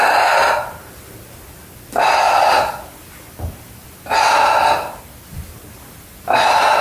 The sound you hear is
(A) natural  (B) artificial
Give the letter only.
A